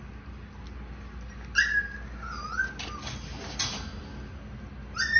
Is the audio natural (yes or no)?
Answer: yes